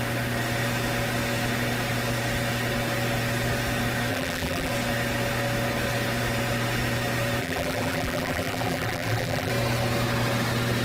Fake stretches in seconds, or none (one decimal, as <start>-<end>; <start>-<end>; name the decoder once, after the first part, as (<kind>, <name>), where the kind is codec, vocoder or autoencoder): 4.1-4.7 (vocoder, BigVGAN v2); 7.4-9.5